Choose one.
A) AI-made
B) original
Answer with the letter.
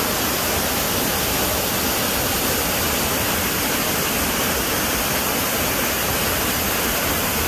B